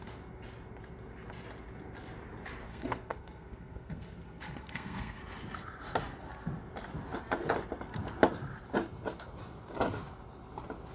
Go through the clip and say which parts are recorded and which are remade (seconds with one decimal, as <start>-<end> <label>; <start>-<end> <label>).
0.0-2.7 recorded; 2.7-5.2 remade; 5.2-10.9 recorded